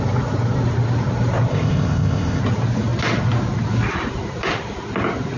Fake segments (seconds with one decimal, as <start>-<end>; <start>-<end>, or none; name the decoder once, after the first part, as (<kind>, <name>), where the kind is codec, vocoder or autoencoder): 1.5-2.4 (codec, ZipCodec)